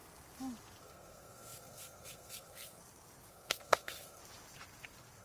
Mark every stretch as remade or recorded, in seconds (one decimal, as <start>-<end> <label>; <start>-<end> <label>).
0.0-0.8 recorded; 0.8-2.8 remade; 2.8-3.3 recorded; 3.3-4.2 remade; 4.2-5.2 recorded